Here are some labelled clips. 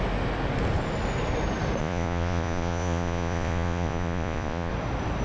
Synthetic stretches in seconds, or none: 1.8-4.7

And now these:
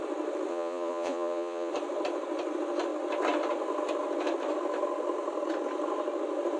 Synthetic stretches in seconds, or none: 0.5-1.7

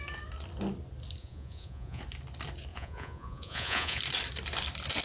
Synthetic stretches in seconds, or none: 1.2-2.0; 2.7-4.0

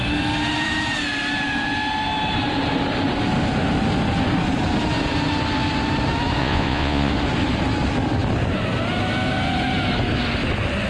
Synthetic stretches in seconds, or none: 6.4-7.1